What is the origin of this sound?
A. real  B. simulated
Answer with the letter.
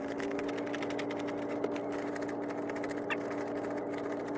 A